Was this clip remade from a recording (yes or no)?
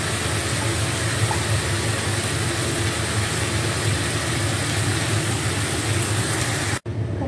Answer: no